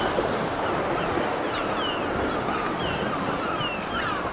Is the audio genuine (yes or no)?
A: yes